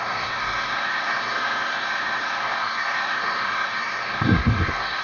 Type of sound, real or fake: fake